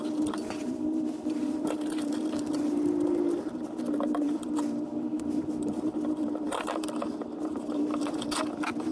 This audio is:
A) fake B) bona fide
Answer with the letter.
A